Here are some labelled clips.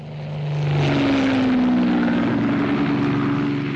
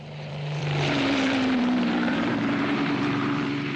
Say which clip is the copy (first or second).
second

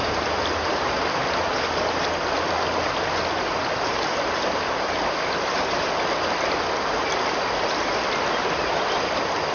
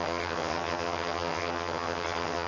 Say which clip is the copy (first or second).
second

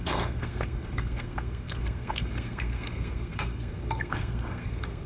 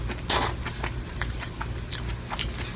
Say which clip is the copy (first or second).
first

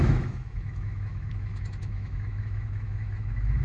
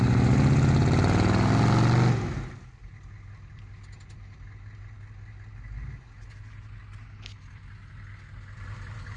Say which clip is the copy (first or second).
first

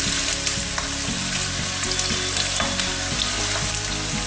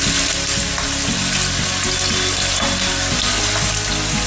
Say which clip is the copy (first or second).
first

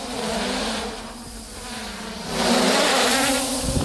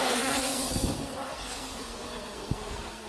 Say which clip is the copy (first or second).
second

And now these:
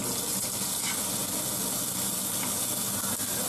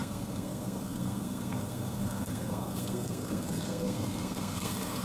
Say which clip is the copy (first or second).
second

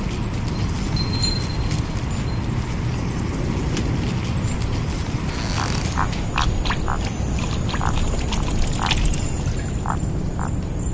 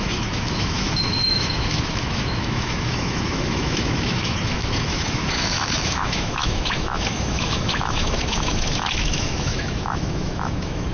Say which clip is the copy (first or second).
second